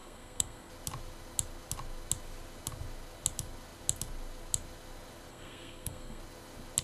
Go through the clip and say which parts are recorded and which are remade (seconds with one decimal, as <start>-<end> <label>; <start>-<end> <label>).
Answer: 0.0-0.7 remade; 0.7-5.3 recorded; 5.3-6.2 remade; 6.2-6.8 recorded